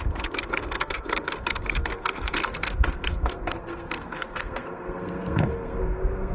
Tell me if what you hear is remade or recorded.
remade